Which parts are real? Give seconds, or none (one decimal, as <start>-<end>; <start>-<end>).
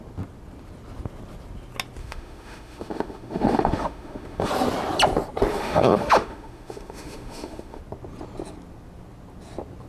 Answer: 0.0-2.0; 4.5-5.5; 7.8-9.9